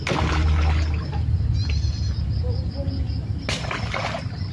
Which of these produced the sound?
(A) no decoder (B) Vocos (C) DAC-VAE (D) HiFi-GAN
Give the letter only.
A